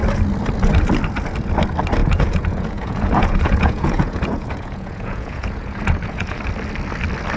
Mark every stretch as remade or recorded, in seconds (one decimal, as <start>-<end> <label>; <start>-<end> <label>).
0.0-2.0 recorded; 2.0-6.4 remade; 6.4-7.4 recorded